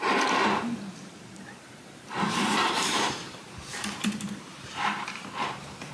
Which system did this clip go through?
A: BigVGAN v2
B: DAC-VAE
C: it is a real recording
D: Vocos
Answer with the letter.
A